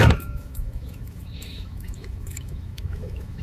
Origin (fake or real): fake